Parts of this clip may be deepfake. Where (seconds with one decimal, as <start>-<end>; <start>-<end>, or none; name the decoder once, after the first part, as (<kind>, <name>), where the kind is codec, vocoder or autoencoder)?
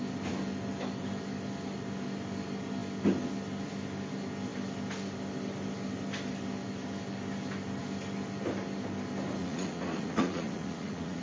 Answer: 9.4-11.2 (vocoder, Vocos)